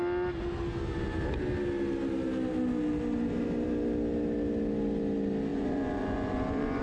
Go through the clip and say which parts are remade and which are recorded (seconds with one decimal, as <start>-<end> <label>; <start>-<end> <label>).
0.0-5.5 recorded; 5.5-6.8 remade